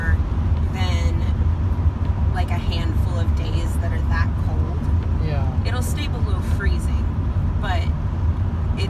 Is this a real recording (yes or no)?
yes